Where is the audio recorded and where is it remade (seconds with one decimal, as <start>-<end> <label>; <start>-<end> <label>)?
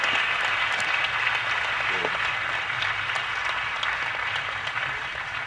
0.0-5.5 recorded